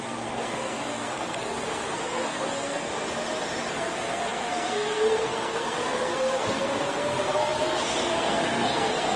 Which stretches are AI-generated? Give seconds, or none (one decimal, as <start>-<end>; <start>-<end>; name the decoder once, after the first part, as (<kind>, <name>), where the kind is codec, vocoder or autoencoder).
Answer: 0.0-2.9 (codec, SNAC); 3.7-9.2